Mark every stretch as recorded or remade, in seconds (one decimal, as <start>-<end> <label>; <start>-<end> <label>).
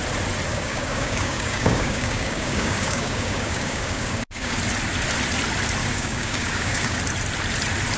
0.0-0.5 recorded; 0.5-4.6 remade; 4.6-5.8 recorded; 5.8-7.0 remade; 7.0-8.0 recorded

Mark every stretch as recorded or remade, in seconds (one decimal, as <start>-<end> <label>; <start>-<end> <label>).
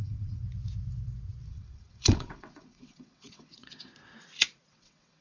0.0-0.4 remade; 0.4-1.5 recorded; 1.5-3.9 remade; 3.9-4.7 recorded; 4.7-5.2 remade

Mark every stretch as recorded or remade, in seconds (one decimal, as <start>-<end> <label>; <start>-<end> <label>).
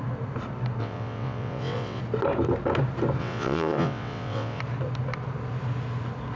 0.0-0.8 recorded; 0.8-2.0 remade; 2.0-3.2 recorded; 3.2-4.6 remade; 4.6-6.4 recorded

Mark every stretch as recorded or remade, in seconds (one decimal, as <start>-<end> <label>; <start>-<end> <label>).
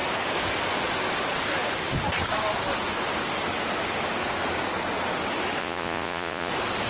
0.0-5.6 recorded; 5.6-6.5 remade; 6.5-6.9 recorded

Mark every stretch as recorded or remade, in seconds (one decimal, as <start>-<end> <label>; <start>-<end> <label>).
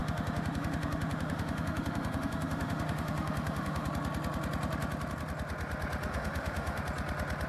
0.0-3.9 remade; 3.9-6.1 recorded; 6.1-6.8 remade; 6.8-7.5 recorded